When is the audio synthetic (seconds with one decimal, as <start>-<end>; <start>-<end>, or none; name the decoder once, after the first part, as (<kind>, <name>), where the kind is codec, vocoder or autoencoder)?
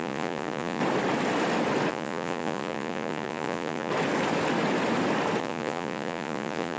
0.0-0.8 (vocoder, Vocos); 1.9-3.9; 5.4-6.8